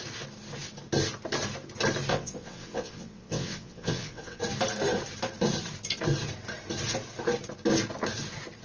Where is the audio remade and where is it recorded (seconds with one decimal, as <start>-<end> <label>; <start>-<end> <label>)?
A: 0.0-2.1 recorded; 2.1-4.4 remade; 4.4-8.6 recorded